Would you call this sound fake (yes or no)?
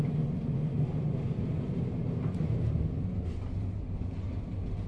no